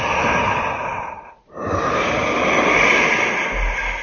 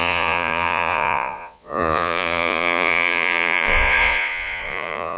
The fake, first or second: second